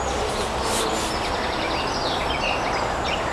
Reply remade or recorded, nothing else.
recorded